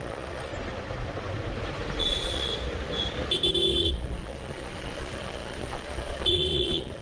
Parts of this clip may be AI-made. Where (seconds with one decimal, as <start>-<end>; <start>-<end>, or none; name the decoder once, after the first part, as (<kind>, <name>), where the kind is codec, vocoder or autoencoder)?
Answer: 0.0-0.5 (vocoder, Vocos); 2.0-2.5; 3.8-7.0